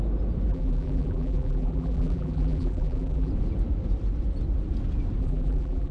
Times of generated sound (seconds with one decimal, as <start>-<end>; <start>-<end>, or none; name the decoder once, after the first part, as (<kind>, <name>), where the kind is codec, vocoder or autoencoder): 0.5-3.3 (vocoder, BigVGAN v2); 5.2-5.9